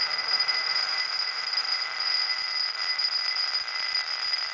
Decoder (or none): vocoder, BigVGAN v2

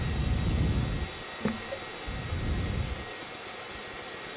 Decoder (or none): none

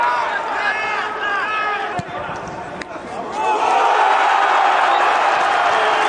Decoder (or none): none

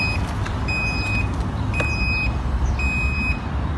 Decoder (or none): none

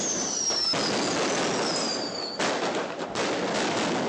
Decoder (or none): none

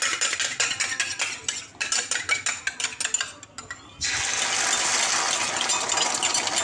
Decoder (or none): none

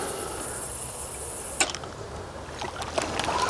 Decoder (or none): none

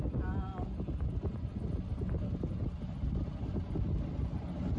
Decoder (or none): none